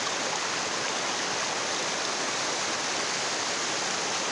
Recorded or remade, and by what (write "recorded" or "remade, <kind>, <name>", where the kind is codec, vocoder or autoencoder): recorded